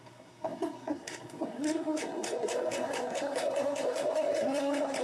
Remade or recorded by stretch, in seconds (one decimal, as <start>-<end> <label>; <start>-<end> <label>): 0.0-5.0 remade